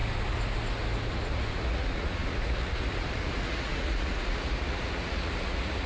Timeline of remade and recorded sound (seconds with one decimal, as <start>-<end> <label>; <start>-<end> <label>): 0.0-1.1 recorded; 1.1-5.9 remade